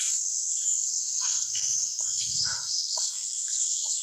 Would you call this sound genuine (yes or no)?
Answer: no